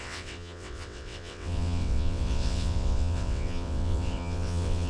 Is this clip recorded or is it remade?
remade